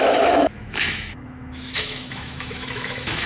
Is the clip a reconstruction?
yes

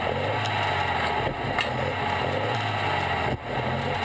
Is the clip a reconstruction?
no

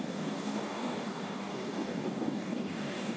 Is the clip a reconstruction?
yes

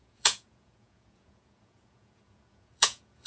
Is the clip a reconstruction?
yes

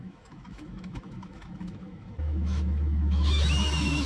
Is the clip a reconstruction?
yes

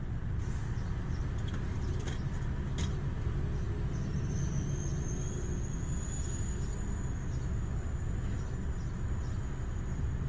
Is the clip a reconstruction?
no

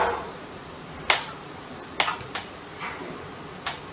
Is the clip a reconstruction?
no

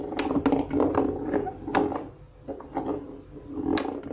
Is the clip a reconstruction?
no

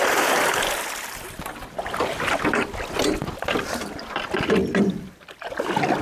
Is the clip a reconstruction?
no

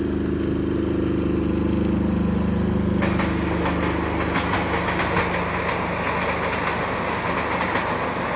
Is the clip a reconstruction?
no